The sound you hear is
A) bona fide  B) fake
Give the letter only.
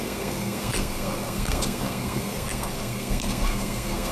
B